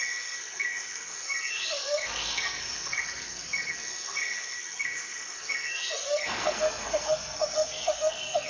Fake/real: fake